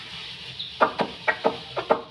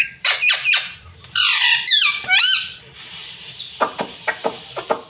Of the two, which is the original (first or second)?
first